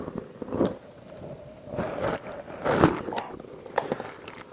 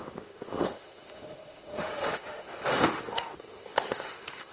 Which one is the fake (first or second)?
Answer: second